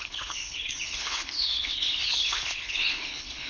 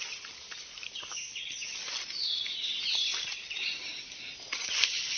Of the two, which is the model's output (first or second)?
first